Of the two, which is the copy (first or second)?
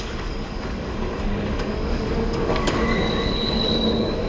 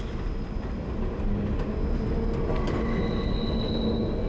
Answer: first